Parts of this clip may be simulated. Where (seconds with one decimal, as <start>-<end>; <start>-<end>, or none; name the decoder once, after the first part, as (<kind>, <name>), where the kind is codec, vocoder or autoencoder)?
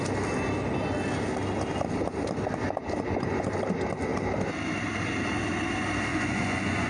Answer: 6.1-6.9 (vocoder, Vocos)